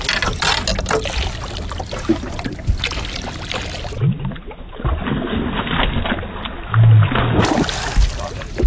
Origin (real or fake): real